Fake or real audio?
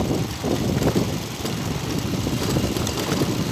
real